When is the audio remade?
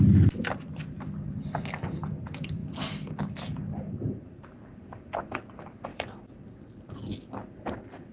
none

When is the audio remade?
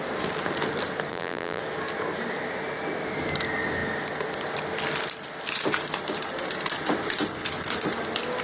1.1-1.6 (vocoder, BigVGAN v2)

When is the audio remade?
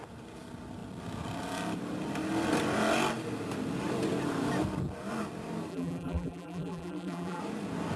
5.7-7.4 (vocoder, BigVGAN v2)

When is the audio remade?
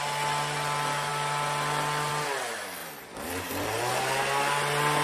2.8-3.8 (vocoder, BigVGAN v2)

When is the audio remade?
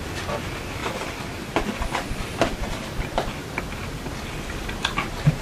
0.8-3.6 (vocoder, BigVGAN v2)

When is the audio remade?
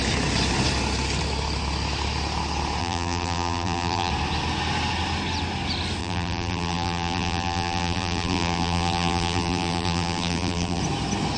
2.8-4.1 (vocoder, BigVGAN v2); 6.0-10.8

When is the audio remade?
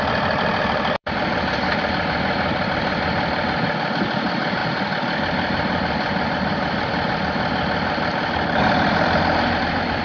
0.0-10.0 (vocoder, BigVGAN v2)